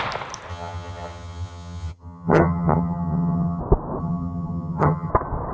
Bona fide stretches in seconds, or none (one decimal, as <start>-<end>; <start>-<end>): 0.0-0.5; 3.6-4.0; 5.1-5.5